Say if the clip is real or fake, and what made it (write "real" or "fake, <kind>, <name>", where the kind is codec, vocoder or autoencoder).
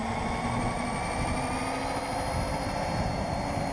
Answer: real